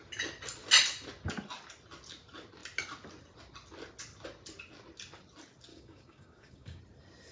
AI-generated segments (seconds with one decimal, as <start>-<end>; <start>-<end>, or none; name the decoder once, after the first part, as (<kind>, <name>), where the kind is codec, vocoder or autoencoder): 5.7-6.8 (codec, DAC)